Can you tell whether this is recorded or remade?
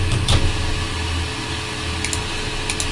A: recorded